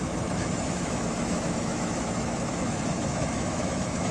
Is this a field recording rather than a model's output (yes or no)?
no